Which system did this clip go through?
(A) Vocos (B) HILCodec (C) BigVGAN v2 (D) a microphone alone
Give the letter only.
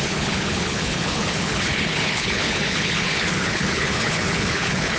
B